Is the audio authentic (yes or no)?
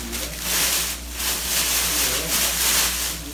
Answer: yes